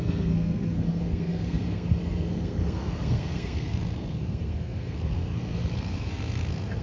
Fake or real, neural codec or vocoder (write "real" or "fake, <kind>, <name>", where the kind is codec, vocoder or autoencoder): fake, codec, SNAC